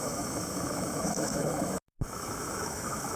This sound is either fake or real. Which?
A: fake